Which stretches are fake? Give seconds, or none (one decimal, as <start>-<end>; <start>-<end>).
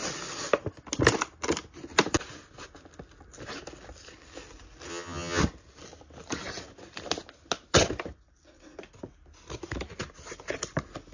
4.9-5.4